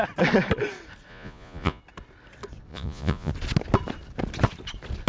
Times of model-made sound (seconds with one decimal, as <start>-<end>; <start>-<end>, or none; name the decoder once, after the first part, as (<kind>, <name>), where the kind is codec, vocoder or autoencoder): 1.1-1.8 (vocoder, Vocos); 2.7-3.3